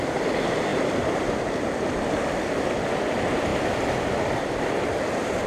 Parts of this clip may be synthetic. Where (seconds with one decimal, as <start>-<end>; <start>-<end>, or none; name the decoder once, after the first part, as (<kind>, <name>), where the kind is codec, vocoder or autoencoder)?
0.0-3.5 (vocoder, BigVGAN v2); 4.3-5.5